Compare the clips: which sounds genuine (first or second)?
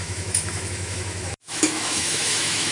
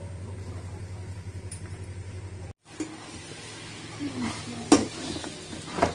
second